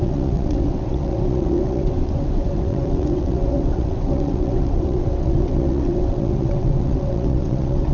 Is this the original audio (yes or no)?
no